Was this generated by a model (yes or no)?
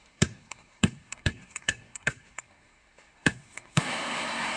yes